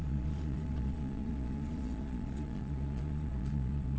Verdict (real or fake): fake